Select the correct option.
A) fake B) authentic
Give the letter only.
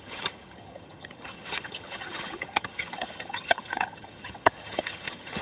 A